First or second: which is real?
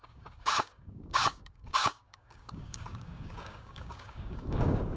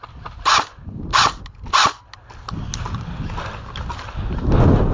second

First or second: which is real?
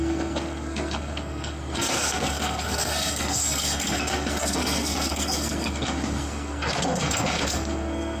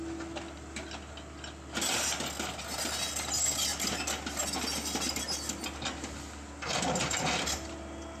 second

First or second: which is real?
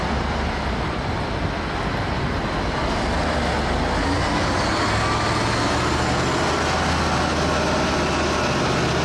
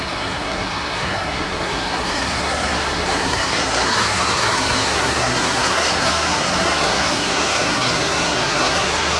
first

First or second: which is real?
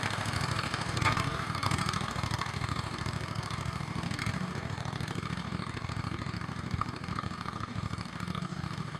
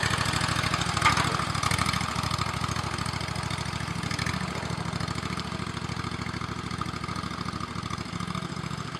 second